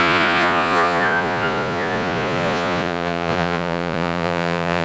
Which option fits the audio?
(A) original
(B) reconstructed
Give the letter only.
B